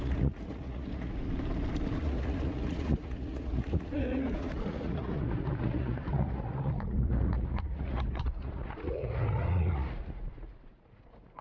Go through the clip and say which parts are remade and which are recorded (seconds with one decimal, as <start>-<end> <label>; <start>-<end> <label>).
0.0-1.2 remade; 1.2-2.0 recorded; 2.0-11.4 remade